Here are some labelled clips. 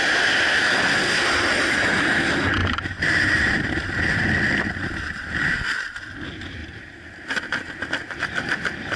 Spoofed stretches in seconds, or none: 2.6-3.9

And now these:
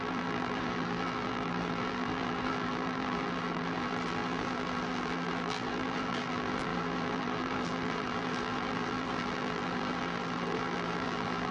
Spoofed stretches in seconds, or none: 0.0-11.5

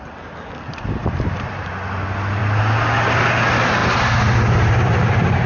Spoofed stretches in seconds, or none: 1.0-1.7; 3.8-5.5

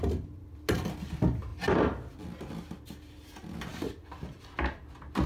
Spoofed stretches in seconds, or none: none

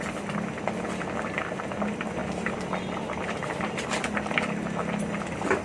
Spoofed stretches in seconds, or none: none

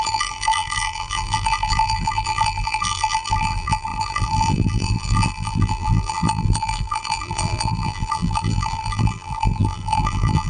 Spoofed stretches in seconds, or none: 0.0-10.5

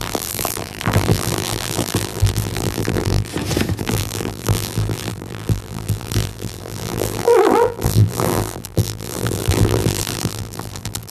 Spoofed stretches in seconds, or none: 0.0-3.3; 3.8-11.1